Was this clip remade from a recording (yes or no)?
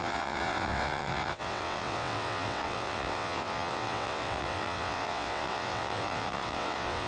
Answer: yes